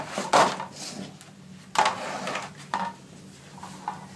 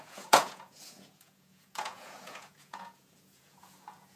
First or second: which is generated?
second